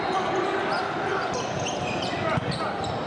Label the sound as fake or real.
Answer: real